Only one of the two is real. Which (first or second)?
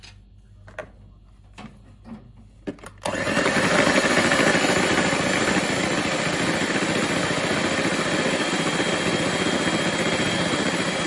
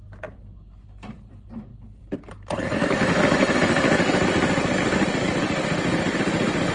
first